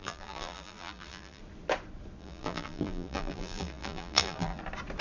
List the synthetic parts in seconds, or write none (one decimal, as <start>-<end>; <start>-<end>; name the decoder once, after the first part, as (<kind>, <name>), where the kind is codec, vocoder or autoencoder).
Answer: 0.0-1.4 (vocoder, BigVGAN v2); 2.2-4.6